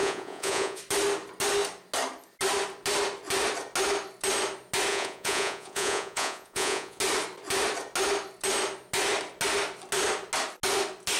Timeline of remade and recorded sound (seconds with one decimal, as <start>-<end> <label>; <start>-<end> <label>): 0.0-0.8 remade; 0.8-4.9 recorded; 4.9-7.0 remade; 7.0-11.2 recorded